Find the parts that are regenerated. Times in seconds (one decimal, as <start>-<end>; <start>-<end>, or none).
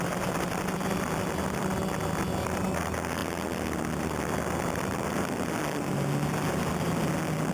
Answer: none